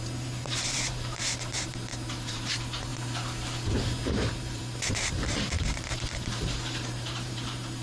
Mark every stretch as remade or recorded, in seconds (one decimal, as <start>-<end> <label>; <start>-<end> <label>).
0.0-2.9 remade; 2.9-4.1 recorded; 4.1-7.8 remade